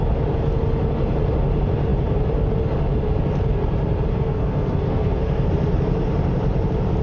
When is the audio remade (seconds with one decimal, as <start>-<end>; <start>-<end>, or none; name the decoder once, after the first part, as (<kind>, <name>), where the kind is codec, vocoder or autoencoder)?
4.1-5.5 (codec, SNAC)